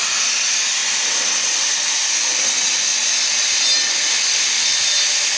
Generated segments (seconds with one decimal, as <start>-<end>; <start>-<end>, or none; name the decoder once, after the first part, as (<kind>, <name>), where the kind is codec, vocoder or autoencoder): none